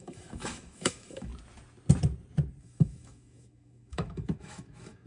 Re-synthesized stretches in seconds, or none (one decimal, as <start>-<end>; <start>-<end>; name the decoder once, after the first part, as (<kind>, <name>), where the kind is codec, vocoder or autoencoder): 0.0-1.3 (autoencoder, DAC-VAE); 2.6-5.1